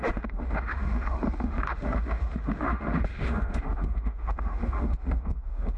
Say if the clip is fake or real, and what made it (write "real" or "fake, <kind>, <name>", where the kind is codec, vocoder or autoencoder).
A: fake, autoencoder, DAC-VAE